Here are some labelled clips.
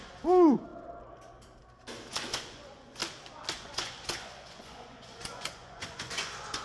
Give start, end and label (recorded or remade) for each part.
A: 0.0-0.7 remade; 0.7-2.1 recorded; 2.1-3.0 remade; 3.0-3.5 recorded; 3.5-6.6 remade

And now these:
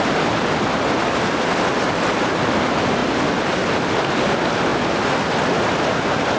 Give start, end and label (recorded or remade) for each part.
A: 0.0-6.4 recorded

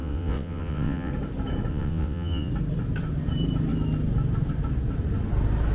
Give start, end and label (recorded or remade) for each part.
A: 0.0-1.1 remade; 1.1-1.7 recorded; 1.7-2.5 remade; 2.5-5.7 recorded

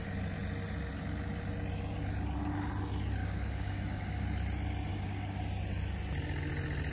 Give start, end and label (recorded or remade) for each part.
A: 0.0-3.2 recorded; 3.2-4.2 remade; 4.2-4.9 recorded; 4.9-5.4 remade; 5.4-6.9 recorded